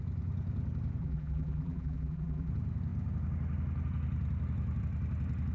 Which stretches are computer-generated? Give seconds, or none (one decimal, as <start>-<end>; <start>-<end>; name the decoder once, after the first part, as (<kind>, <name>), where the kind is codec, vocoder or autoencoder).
1.0-2.5 (vocoder, BigVGAN v2)